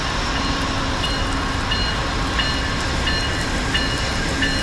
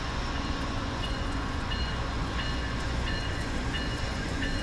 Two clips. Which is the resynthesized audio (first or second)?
second